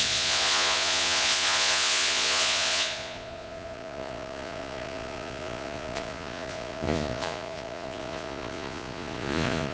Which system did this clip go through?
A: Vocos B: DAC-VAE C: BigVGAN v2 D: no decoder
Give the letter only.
A